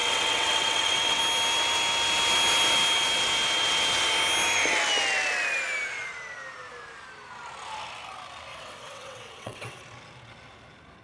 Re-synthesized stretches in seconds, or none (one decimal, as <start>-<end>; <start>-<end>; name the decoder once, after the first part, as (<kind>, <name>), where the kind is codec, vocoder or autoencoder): 0.0-1.2 (vocoder, WaveNeXt); 8.5-9.8